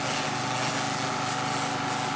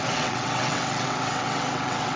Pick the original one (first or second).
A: first